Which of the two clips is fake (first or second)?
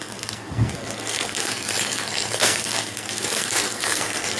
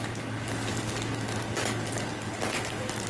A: first